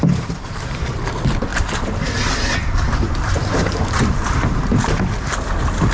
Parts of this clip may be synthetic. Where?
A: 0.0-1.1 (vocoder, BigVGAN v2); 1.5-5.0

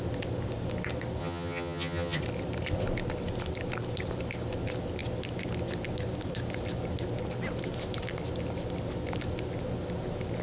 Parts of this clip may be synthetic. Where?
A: 1.2-2.2 (vocoder, HiFi-GAN)

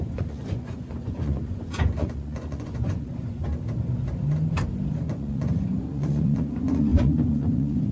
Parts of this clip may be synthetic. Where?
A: 0.0-3.4 (vocoder, Vocos); 5.0-7.9